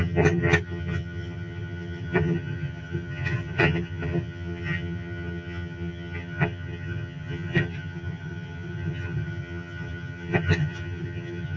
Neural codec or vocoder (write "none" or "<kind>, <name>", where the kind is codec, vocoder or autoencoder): vocoder, HiFi-GAN